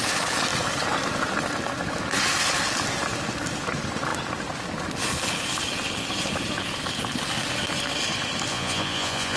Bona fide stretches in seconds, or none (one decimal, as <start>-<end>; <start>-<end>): 0.0-8.5